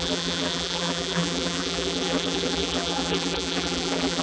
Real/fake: fake